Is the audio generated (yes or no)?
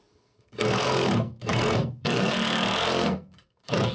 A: yes